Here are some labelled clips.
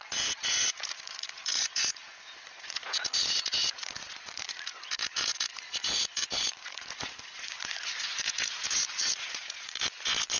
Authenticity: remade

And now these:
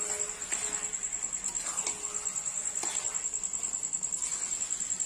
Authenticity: recorded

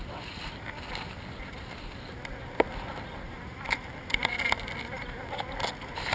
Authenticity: recorded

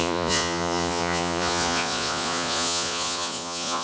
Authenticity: remade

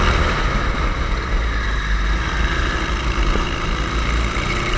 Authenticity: recorded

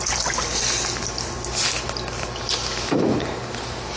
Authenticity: recorded